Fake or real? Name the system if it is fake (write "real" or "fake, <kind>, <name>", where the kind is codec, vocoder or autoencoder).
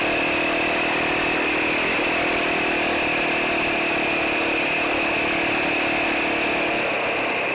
real